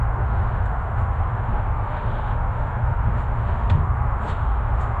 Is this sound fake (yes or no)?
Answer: yes